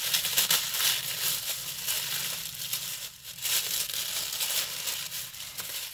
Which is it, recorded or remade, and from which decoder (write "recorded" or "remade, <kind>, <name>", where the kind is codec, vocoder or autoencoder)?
recorded